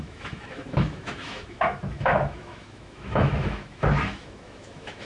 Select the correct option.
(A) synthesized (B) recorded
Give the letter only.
A